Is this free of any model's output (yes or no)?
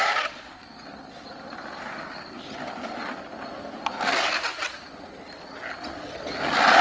yes